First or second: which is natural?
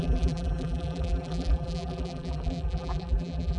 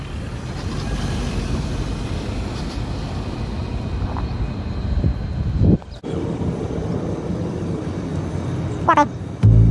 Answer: second